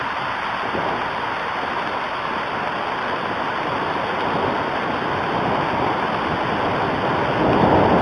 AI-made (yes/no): no